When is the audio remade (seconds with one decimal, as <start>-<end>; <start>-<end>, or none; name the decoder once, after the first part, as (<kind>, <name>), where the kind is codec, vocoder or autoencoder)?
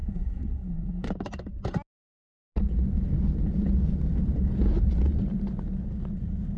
0.0-1.1 (codec, SNAC)